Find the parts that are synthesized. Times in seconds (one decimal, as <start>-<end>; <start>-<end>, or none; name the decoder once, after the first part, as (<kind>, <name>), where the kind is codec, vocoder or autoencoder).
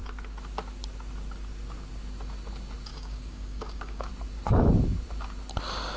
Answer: 2.9-4.1 (codec, DAC)